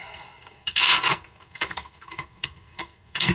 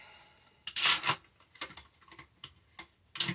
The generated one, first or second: first